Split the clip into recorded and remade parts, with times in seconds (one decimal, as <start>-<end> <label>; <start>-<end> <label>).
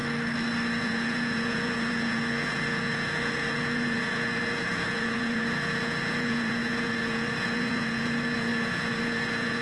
0.0-0.8 recorded; 0.8-9.6 remade